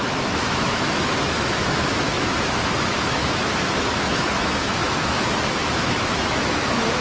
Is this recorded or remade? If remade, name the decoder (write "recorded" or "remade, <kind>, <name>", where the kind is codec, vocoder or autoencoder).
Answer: remade, autoencoder, DAC-VAE